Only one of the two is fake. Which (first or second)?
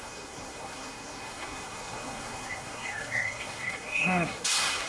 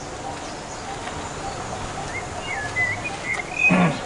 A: first